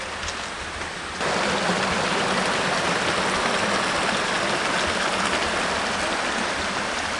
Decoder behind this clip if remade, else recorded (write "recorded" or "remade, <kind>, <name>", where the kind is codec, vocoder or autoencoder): recorded